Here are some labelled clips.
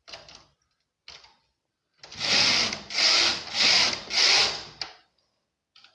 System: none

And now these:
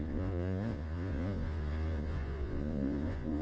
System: vocoder, Vocos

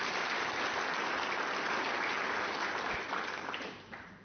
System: none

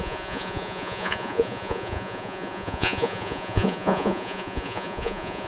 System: vocoder, Vocos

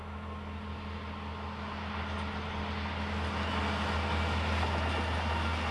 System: none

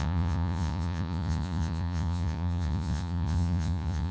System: vocoder, Vocos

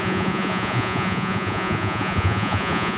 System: vocoder, Vocos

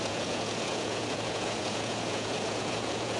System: vocoder, Vocos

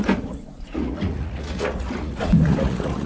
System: vocoder, Vocos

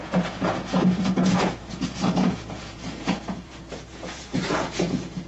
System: vocoder, Vocos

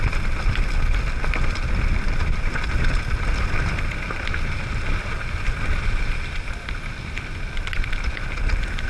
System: none